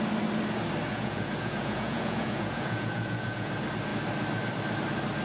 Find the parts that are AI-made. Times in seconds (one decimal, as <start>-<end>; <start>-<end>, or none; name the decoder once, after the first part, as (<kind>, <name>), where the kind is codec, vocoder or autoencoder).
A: 0.9-3.5 (vocoder, Vocos)

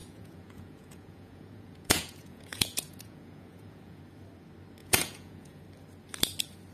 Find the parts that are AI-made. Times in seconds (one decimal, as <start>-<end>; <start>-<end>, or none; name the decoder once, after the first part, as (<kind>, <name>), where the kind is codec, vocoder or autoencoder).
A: 0.0-4.0 (vocoder, Vocos); 4.8-5.6